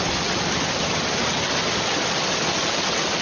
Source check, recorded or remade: recorded